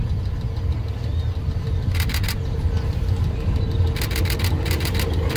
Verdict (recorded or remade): recorded